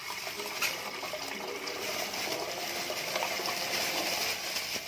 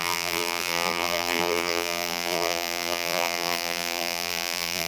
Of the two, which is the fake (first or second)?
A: second